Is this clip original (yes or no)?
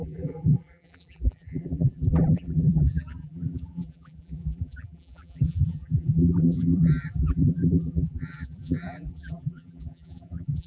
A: no